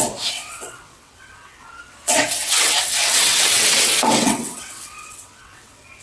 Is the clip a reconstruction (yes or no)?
yes